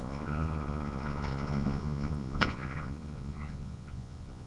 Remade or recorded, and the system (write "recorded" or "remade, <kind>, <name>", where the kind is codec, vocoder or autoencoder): remade, vocoder, Vocos